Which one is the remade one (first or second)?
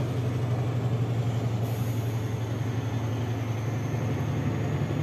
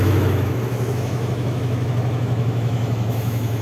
second